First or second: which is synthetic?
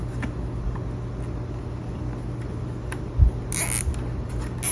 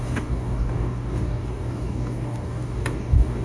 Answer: second